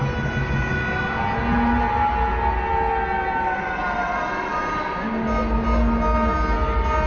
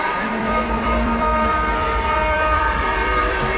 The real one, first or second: first